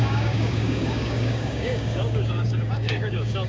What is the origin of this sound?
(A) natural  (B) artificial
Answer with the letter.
B